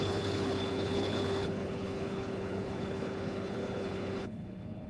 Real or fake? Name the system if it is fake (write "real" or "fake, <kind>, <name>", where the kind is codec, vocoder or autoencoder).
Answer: fake, codec, HILCodec